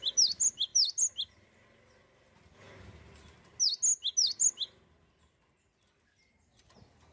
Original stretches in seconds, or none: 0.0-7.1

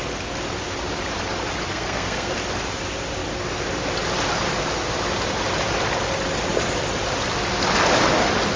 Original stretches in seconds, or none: 0.0-1.7; 2.3-8.6